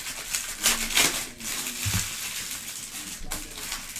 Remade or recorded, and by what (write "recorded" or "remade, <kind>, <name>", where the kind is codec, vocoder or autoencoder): recorded